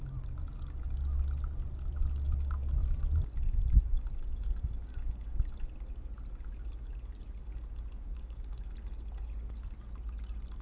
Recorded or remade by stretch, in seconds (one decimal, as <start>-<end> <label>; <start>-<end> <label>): 0.0-8.1 recorded; 8.1-8.7 remade; 8.7-10.6 recorded